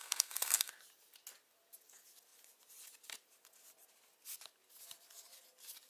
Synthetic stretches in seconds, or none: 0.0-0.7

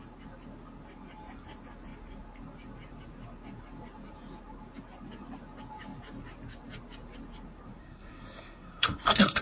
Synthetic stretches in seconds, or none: 7.8-9.4

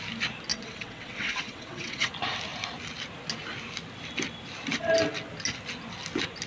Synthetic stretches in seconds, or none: 0.5-2.1

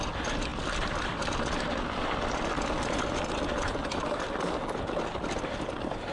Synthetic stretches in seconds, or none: none

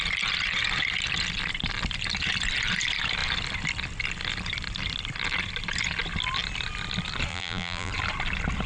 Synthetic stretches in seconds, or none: 7.3-7.9